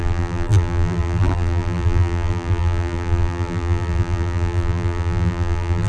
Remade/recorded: remade